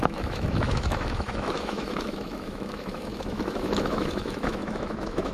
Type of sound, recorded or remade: remade